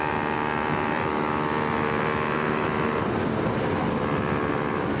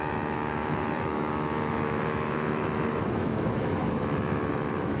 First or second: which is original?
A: first